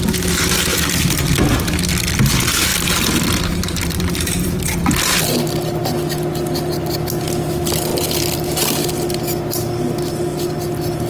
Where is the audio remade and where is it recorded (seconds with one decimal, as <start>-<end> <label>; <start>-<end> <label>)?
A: 0.0-0.7 recorded; 0.7-1.2 remade; 1.2-2.7 recorded; 2.7-4.9 remade; 4.9-7.9 recorded; 7.9-8.9 remade; 8.9-11.1 recorded